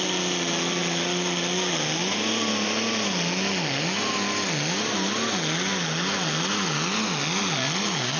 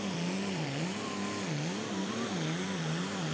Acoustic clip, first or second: first